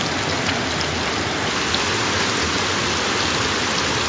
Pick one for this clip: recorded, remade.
recorded